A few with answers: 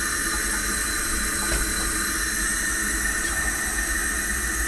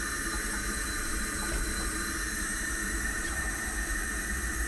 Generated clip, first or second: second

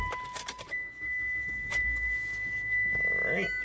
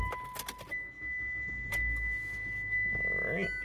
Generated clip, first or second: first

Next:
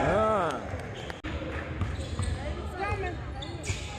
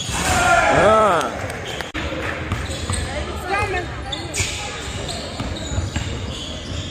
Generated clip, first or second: second